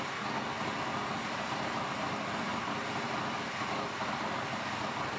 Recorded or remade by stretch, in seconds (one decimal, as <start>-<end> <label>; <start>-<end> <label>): 0.0-5.2 recorded